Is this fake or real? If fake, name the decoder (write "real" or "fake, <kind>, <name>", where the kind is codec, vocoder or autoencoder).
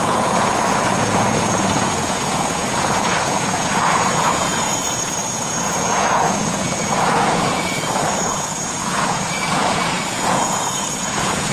fake, vocoder, Vocos